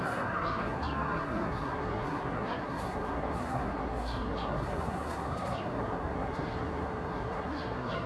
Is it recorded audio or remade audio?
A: remade